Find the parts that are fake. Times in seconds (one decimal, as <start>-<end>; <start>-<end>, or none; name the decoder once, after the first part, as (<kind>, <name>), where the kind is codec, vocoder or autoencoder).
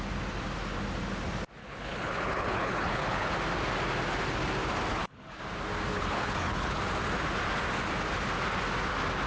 1.6-3.3 (codec, HILCodec); 4.9-5.4; 5.9-6.8